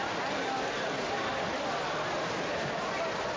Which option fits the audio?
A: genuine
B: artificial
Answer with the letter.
A